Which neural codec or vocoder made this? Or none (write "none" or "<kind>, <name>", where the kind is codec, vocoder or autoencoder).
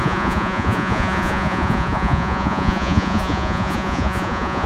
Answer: vocoder, Vocos